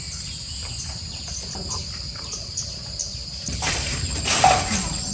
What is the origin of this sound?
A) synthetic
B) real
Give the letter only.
B